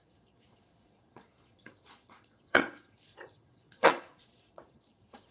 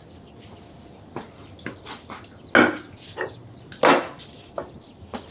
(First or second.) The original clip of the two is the second